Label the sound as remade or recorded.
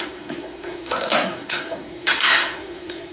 remade